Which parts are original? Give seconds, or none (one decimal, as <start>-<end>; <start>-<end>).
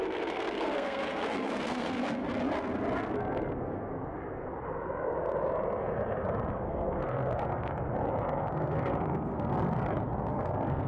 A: 2.2-3.1; 3.9-6.5; 7.7-8.4; 9.5-10.3